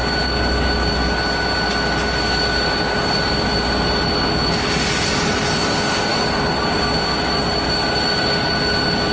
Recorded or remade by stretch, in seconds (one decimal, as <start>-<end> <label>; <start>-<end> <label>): 0.0-9.1 recorded